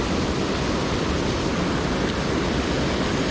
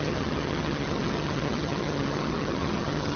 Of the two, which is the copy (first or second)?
second